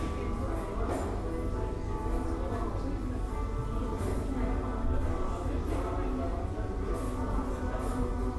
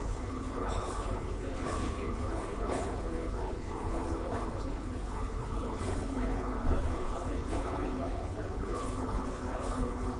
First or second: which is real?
first